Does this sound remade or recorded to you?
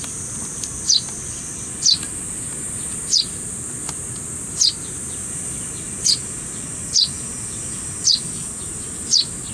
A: recorded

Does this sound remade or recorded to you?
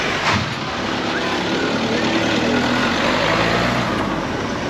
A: recorded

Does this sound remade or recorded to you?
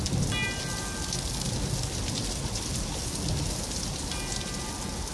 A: recorded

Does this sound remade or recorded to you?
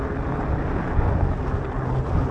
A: recorded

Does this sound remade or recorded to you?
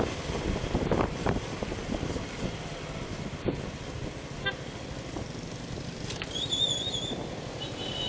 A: recorded